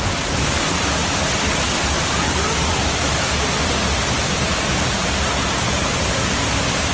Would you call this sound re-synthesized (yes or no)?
no